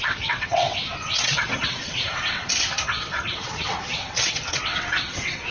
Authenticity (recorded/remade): remade